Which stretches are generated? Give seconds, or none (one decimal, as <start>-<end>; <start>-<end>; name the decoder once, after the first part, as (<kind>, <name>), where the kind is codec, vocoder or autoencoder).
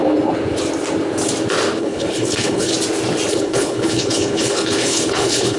1.8-2.7 (codec, HILCodec); 3.3-5.6